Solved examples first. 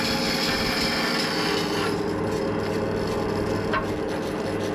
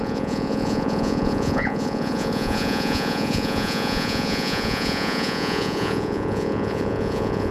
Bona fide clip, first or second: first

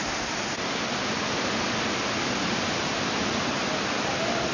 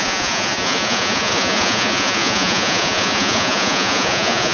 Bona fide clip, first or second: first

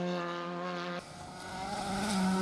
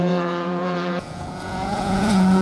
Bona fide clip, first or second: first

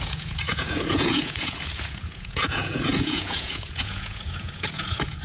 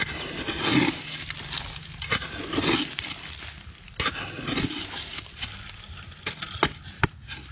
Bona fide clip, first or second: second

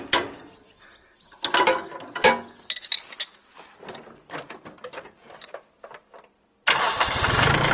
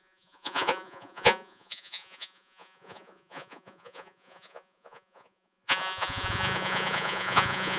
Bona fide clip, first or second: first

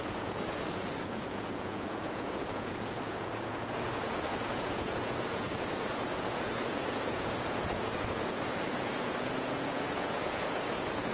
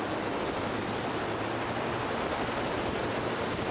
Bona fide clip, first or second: second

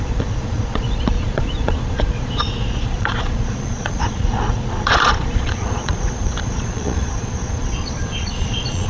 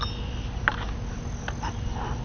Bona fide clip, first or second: second